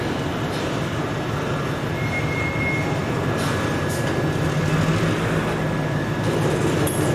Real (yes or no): yes